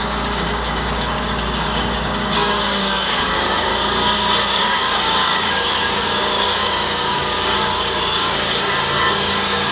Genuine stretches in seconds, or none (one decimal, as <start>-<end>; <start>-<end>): 3.7-4.5